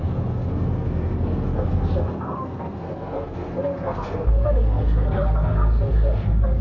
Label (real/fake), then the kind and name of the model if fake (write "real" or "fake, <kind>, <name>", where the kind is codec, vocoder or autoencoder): fake, codec, SNAC